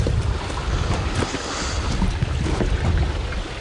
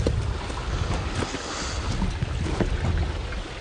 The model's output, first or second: first